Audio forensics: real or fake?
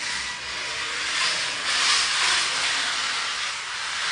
real